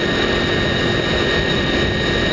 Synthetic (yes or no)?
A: no